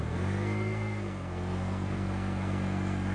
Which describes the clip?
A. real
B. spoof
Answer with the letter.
B